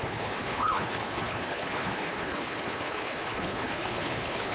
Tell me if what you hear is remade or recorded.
remade